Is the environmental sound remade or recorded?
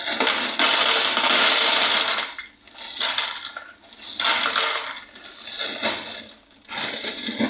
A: recorded